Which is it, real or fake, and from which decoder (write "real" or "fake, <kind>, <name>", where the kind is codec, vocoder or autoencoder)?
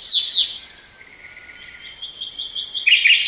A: real